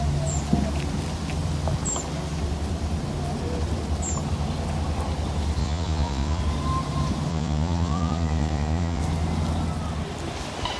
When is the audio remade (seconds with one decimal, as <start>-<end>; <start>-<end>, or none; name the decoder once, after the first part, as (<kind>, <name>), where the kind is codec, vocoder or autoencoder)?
5.6-6.4 (vocoder, Vocos); 7.3-9.0